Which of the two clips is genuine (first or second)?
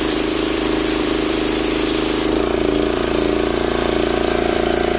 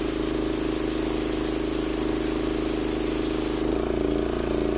second